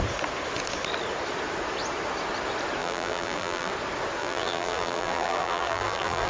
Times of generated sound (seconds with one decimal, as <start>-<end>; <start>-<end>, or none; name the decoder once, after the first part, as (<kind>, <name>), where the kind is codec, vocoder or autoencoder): 2.8-3.7 (vocoder, BigVGAN v2); 4.2-6.3